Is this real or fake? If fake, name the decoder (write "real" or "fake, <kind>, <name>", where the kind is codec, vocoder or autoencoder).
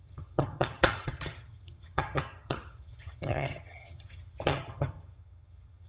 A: fake, vocoder, HiFi-GAN